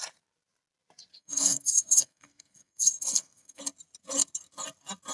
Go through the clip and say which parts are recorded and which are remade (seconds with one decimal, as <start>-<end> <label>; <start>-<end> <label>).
0.0-1.1 recorded; 1.1-3.6 remade; 3.6-5.1 recorded